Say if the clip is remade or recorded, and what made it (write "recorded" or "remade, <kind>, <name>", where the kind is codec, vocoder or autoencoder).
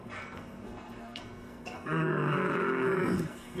remade, codec, SNAC